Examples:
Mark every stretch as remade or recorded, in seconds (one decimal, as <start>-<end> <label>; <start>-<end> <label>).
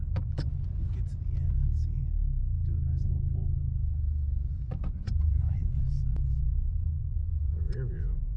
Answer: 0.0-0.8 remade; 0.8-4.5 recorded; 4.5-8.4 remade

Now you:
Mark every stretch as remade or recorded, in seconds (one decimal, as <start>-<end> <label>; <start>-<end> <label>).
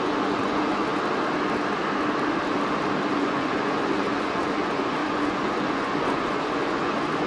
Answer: 0.0-0.9 remade; 0.9-3.1 recorded; 3.1-7.3 remade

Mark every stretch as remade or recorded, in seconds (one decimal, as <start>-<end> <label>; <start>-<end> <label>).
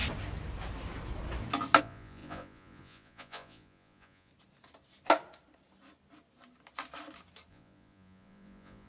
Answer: 0.0-1.8 recorded; 1.8-4.3 remade; 4.3-7.5 recorded; 7.5-8.9 remade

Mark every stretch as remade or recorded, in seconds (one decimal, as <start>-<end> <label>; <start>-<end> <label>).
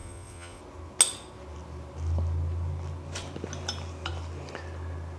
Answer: 0.0-0.6 remade; 0.6-5.2 recorded